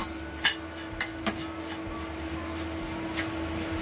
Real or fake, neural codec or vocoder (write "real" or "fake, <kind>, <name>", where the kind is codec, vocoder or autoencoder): real